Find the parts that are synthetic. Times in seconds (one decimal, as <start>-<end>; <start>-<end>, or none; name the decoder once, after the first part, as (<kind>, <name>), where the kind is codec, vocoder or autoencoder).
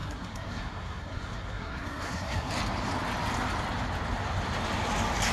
0.0-2.5 (codec, SNAC)